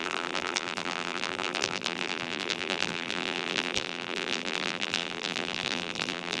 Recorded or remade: remade